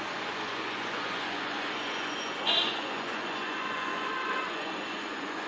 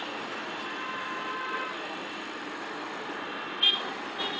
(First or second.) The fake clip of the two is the first